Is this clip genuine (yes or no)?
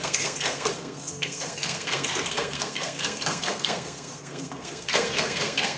no